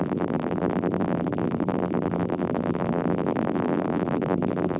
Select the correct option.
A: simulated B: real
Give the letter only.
A